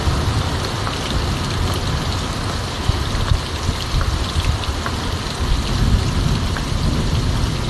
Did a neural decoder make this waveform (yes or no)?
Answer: no